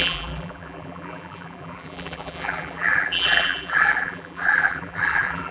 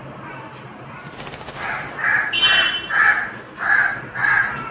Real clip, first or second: second